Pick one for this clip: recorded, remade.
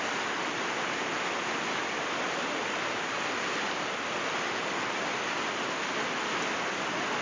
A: recorded